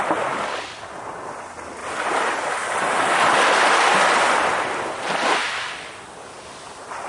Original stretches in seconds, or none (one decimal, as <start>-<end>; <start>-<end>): 0.0-7.1